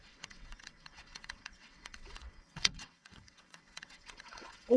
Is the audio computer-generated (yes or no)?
yes